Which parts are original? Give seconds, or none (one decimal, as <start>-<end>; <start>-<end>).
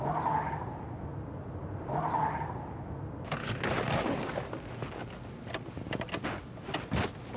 0.0-7.4